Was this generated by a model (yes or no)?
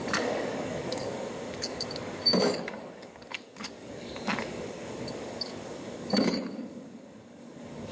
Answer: yes